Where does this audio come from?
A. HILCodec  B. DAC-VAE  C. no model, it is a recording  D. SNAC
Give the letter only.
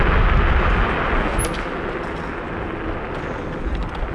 C